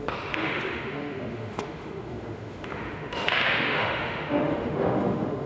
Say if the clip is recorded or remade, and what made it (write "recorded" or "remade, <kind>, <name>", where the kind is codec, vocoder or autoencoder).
remade, autoencoder, DAC-VAE